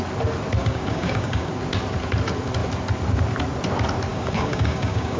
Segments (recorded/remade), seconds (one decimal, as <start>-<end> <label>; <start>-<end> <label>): 0.0-0.6 recorded; 0.6-1.5 remade; 1.5-4.1 recorded; 4.1-5.2 remade